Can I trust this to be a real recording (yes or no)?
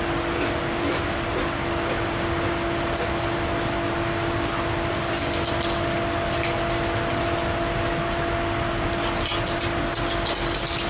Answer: yes